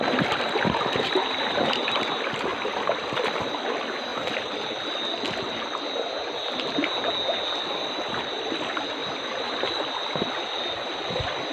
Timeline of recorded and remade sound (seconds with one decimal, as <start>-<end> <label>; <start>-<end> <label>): 0.0-4.1 remade; 4.1-7.9 recorded; 7.9-11.5 remade